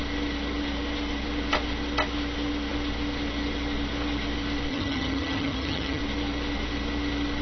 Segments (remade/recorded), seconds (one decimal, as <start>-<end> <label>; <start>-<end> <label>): 0.0-4.7 recorded; 4.7-6.0 remade; 6.0-7.4 recorded